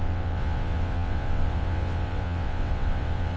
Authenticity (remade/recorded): remade